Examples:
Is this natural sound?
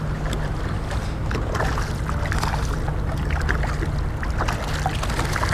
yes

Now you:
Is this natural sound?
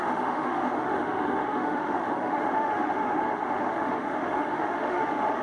no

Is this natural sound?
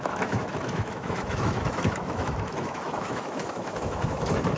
no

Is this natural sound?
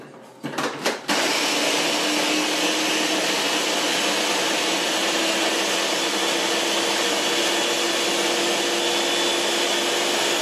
yes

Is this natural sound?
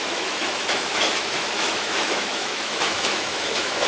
no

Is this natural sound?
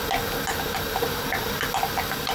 yes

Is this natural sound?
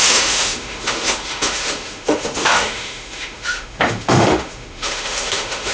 no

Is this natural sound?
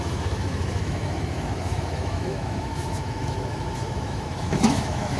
no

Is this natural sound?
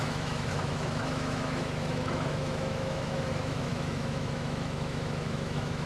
no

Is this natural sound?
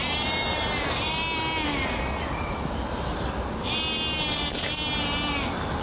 yes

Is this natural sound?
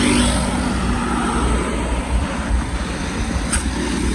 yes